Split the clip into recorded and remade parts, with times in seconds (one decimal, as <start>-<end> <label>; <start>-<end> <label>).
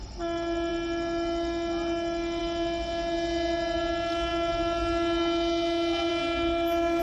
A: 0.0-7.0 recorded